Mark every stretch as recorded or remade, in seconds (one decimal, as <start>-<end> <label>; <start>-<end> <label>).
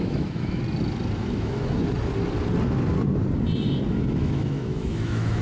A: 0.0-0.6 remade; 0.6-1.2 recorded; 1.2-1.8 remade; 1.8-4.2 recorded; 4.2-5.4 remade